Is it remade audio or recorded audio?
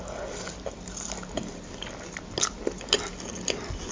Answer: recorded